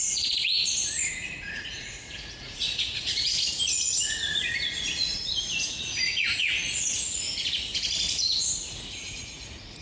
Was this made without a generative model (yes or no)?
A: no